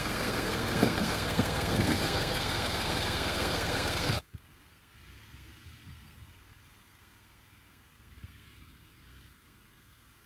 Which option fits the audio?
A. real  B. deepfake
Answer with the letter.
B